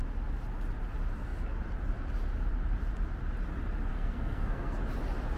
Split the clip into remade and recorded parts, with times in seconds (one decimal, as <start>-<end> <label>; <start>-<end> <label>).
0.0-3.9 recorded; 3.9-4.8 remade; 4.8-5.4 recorded